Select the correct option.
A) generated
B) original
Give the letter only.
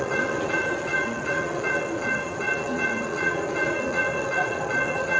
A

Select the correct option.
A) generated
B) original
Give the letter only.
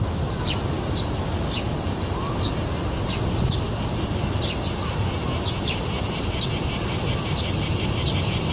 B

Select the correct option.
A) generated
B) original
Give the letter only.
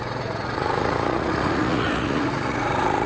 A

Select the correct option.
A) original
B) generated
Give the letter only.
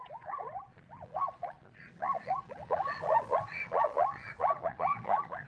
B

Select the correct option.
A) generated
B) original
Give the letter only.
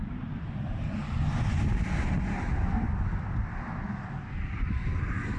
B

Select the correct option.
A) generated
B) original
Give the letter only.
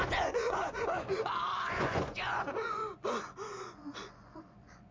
A